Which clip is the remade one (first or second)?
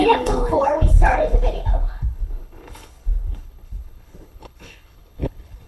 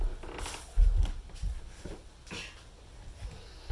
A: first